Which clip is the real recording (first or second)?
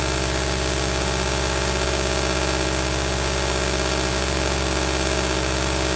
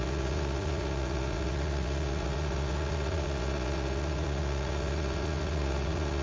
first